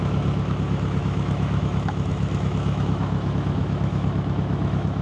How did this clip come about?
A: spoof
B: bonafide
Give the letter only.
A